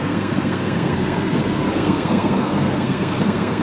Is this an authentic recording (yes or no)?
no